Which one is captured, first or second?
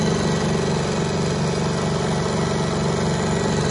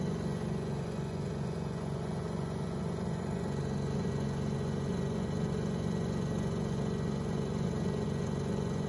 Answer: first